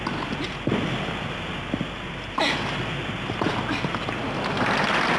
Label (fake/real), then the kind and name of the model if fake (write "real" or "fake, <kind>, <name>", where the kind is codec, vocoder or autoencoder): real